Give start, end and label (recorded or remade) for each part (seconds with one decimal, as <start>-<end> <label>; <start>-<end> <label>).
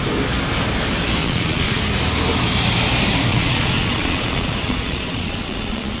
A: 0.0-1.2 recorded; 1.2-1.8 remade; 1.8-3.3 recorded; 3.3-6.0 remade